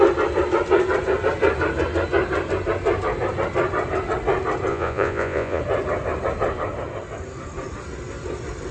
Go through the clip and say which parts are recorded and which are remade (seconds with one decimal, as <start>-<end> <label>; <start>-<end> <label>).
0.0-4.7 recorded; 4.7-5.6 remade; 5.6-8.7 recorded